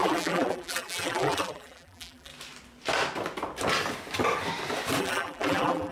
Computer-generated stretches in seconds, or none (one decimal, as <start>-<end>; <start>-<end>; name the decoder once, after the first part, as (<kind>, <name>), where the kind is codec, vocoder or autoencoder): 0.0-2.3 (vocoder, BigVGAN v2); 5.0-5.9